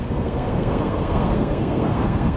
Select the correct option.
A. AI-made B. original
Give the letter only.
A